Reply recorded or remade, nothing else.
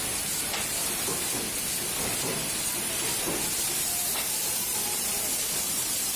remade